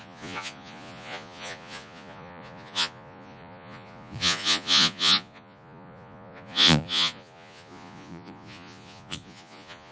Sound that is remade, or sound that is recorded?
remade